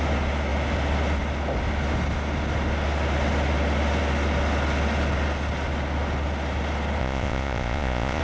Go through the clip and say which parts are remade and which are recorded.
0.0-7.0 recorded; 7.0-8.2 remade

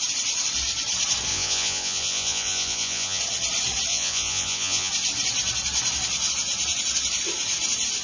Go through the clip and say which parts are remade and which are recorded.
0.0-1.3 recorded; 1.3-3.2 remade; 3.2-3.9 recorded; 3.9-4.9 remade; 4.9-8.0 recorded

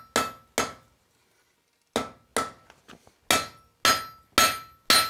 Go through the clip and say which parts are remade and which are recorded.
0.0-5.1 recorded